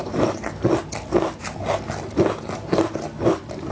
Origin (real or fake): real